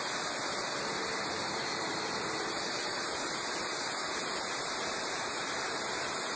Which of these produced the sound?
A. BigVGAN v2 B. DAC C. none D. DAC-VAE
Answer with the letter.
A